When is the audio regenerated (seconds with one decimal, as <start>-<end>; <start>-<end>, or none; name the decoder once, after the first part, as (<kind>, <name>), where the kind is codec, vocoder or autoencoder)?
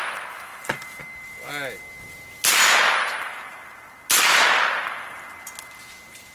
0.5-1.5 (vocoder, BigVGAN v2)